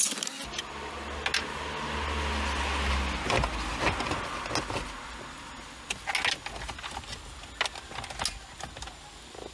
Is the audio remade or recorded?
recorded